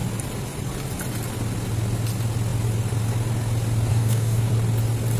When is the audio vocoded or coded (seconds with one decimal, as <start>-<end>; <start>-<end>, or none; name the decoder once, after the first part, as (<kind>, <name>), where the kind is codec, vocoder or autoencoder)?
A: 3.9-4.5 (codec, DAC)